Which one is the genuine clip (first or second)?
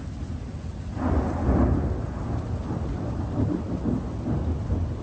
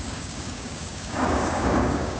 first